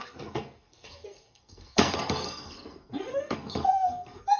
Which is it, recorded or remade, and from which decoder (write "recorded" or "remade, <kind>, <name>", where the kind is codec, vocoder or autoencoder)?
remade, codec, SNAC